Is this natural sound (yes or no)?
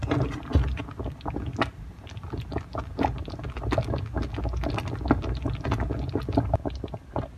yes